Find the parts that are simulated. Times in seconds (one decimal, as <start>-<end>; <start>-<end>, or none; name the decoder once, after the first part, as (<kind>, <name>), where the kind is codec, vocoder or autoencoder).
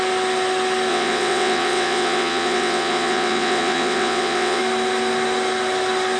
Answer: 0.9-4.6 (vocoder, WaveNeXt)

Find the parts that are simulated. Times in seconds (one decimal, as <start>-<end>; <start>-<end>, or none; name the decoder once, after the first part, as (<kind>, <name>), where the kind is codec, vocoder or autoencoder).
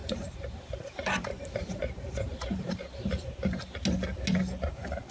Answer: 0.0-3.1 (vocoder, BigVGAN v2)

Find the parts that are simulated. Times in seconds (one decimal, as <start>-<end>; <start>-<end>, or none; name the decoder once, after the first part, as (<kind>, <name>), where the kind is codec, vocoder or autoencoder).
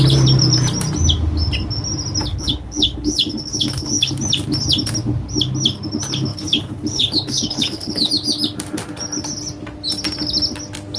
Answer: 2.3-4.1 (codec, HILCodec); 6.3-8.1